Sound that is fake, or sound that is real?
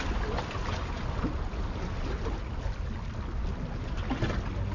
real